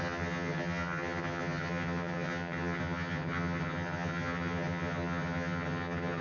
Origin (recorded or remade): remade